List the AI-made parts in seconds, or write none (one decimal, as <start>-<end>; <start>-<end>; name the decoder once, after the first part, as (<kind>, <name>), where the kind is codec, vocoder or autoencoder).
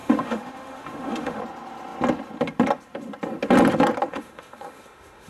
0.0-1.4 (autoencoder, DAC-VAE); 4.1-5.3